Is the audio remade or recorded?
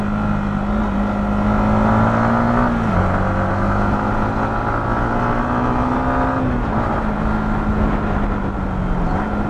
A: recorded